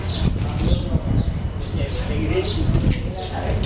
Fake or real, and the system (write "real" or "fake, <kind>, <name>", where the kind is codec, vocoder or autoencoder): real